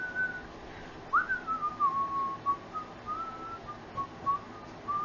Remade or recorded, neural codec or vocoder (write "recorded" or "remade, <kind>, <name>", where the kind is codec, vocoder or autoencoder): recorded